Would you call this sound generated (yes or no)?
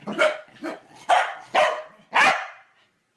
no